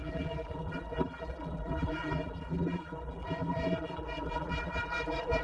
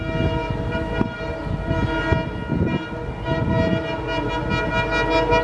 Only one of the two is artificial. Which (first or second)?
first